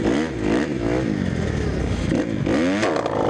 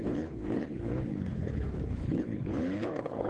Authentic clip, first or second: first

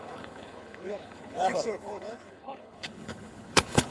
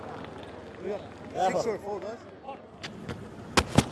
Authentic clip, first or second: second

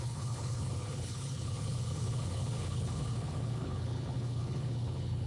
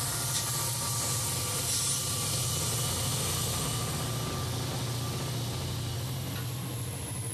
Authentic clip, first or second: second